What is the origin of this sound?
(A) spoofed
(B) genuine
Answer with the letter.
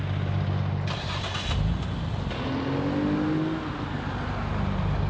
B